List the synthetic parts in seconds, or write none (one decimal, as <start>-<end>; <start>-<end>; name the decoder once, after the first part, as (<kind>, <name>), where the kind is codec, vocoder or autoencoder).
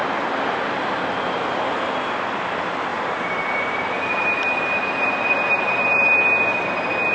2.9-6.1 (vocoder, BigVGAN v2)